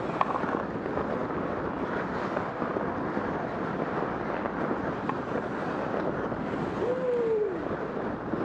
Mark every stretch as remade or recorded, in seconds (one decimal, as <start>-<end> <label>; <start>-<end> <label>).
0.0-8.4 recorded